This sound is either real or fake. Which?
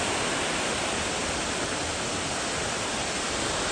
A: real